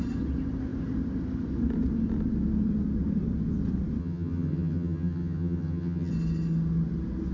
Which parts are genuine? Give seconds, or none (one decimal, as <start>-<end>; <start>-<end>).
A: 0.0-4.0; 6.1-7.3